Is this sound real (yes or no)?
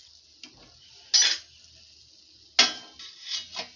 yes